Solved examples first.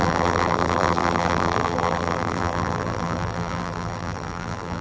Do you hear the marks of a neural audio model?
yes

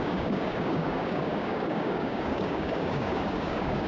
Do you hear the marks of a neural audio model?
yes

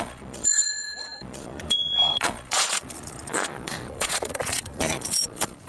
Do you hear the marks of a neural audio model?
yes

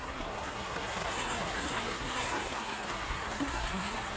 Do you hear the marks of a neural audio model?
yes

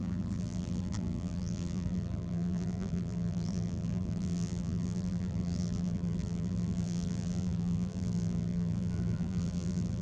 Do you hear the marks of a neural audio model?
yes